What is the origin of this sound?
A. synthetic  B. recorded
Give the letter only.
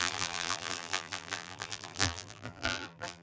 A